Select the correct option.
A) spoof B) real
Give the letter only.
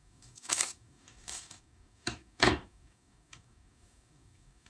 A